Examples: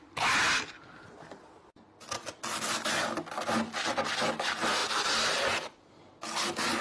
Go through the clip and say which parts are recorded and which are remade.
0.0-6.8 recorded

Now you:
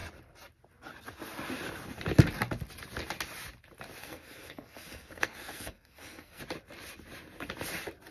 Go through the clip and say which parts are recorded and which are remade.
0.0-4.0 recorded; 4.0-6.4 remade; 6.4-8.1 recorded

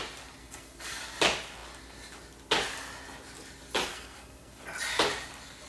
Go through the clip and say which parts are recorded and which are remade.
0.0-0.4 recorded; 0.4-1.0 remade; 1.0-3.9 recorded; 3.9-4.6 remade; 4.6-5.7 recorded